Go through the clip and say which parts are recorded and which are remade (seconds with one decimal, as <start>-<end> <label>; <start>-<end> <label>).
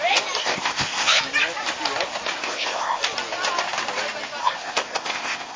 0.0-0.4 recorded; 0.4-1.2 remade; 1.2-2.4 recorded; 2.4-3.0 remade; 3.0-4.4 recorded; 4.4-5.6 remade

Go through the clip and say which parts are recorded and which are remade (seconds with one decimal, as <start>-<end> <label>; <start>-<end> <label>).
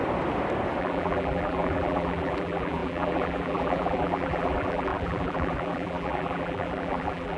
0.0-0.8 recorded; 0.8-7.4 remade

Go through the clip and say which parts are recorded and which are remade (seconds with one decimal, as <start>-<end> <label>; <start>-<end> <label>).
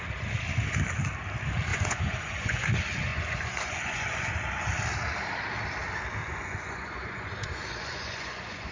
0.0-1.7 recorded; 1.7-2.7 remade; 2.7-3.1 recorded; 3.1-4.3 remade; 4.3-6.2 recorded; 6.2-8.7 remade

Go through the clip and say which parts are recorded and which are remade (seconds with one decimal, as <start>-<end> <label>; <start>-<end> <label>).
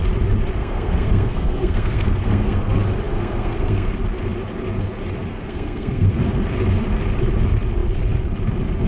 0.0-0.6 recorded; 0.6-2.7 remade; 2.7-3.1 recorded; 3.1-4.0 remade; 4.0-5.3 recorded; 5.3-6.1 remade; 6.1-8.9 recorded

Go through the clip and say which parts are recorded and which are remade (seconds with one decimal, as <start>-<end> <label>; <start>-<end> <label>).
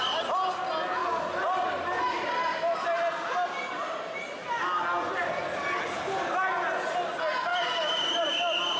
0.0-8.8 recorded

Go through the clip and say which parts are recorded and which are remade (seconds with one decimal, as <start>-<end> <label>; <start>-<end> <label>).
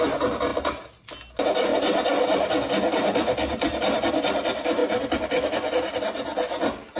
0.0-7.0 recorded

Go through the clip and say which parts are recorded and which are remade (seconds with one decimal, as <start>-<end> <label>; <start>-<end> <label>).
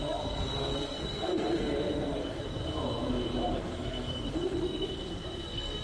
0.0-2.6 remade; 2.6-3.5 recorded; 3.5-5.8 remade